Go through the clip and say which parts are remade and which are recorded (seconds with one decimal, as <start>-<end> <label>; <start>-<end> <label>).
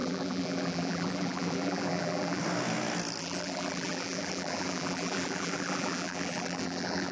0.0-2.4 remade; 2.4-3.2 recorded; 3.2-7.1 remade